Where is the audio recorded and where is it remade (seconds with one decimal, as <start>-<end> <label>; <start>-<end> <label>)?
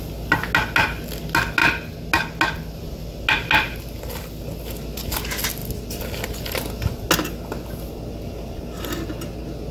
0.0-9.7 recorded